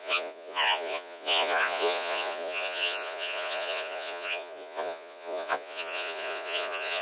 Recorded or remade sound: remade